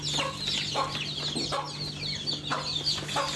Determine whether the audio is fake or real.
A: real